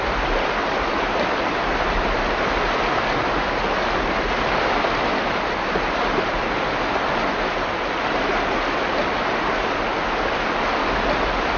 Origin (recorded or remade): recorded